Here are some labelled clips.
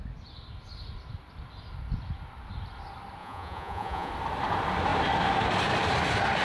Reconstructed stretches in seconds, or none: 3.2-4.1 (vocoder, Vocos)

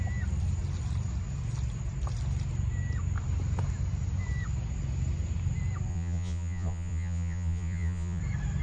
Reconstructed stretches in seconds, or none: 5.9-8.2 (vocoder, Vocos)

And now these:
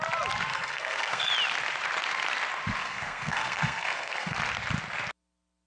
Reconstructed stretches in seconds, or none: 0.5-1.3 (codec, SNAC); 2.8-4.4